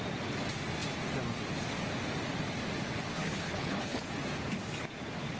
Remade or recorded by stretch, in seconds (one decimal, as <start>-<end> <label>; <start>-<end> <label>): 0.0-3.1 recorded; 3.1-4.1 remade; 4.1-5.4 recorded

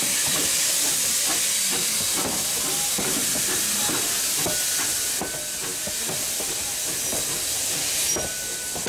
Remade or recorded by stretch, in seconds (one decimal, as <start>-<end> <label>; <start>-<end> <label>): 0.0-8.9 recorded

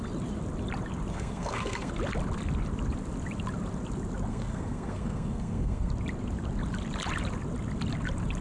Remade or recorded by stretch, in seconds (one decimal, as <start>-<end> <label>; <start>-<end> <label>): 0.0-1.1 recorded; 1.1-1.9 remade; 1.9-4.3 recorded; 4.3-5.9 remade; 5.9-8.4 recorded

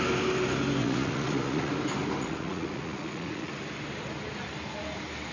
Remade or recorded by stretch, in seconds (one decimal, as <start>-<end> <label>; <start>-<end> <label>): 0.0-0.8 recorded; 0.8-1.7 remade; 1.7-2.2 recorded; 2.2-3.5 remade; 3.5-5.3 recorded

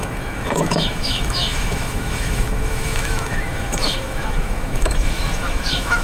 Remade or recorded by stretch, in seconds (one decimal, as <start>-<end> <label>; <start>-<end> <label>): 0.0-6.0 remade

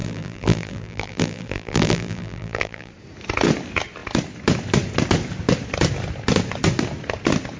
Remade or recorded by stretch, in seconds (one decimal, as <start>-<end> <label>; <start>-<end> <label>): 0.0-2.9 remade; 2.9-7.6 recorded

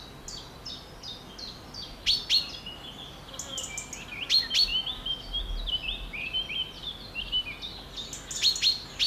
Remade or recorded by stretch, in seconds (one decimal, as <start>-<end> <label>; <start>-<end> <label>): 0.0-9.1 recorded

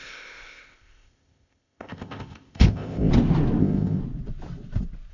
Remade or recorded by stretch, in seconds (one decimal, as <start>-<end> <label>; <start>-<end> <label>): 0.0-3.1 remade; 3.1-3.6 recorded; 3.6-4.0 remade; 4.0-5.1 recorded